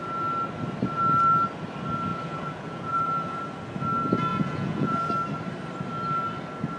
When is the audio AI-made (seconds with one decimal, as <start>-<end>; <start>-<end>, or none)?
2.1-3.4; 4.3-5.1